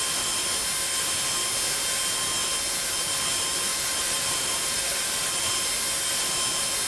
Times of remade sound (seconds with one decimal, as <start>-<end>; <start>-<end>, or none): 3.7-5.5